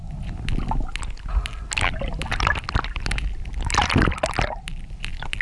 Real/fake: real